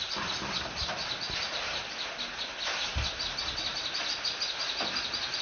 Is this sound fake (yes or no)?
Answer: no